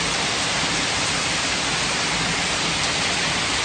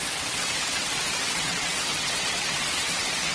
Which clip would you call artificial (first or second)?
second